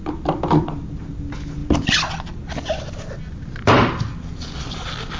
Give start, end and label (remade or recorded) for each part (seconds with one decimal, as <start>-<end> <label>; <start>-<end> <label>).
0.0-5.2 recorded